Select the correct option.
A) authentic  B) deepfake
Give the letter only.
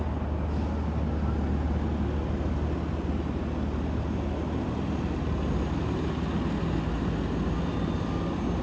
A